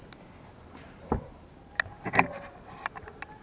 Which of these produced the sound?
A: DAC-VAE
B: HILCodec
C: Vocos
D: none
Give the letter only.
D